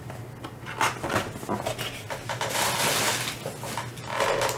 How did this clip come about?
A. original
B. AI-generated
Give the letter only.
A